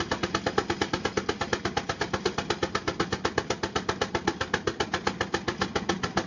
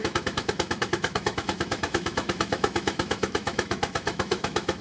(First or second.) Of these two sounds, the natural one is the first